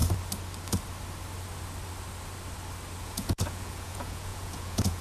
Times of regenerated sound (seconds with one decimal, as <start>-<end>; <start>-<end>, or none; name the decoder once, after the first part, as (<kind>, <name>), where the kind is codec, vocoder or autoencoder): 3.0-5.0 (vocoder, Vocos)